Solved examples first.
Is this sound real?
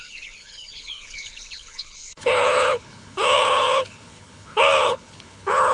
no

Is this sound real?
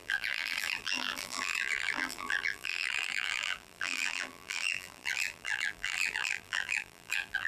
no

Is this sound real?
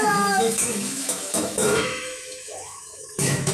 no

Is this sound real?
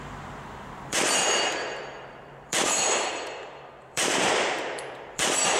no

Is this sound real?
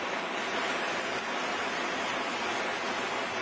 yes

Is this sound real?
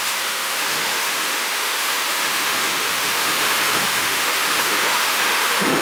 no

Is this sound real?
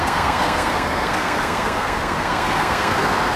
no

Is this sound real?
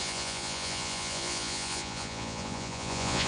no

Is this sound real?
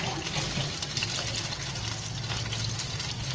yes